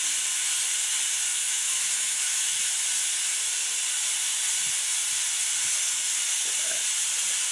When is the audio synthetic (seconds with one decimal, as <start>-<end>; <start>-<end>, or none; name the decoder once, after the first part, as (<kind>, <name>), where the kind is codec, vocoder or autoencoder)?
1.3-2.6 (autoencoder, DAC-VAE)